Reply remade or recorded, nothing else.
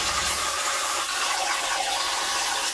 recorded